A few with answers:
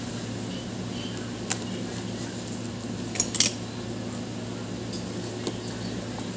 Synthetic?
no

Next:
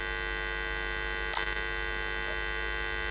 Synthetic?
no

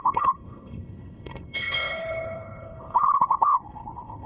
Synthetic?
yes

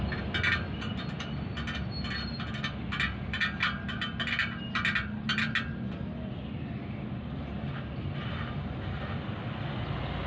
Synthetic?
no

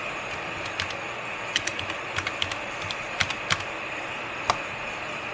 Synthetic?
no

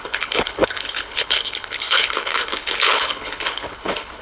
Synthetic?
yes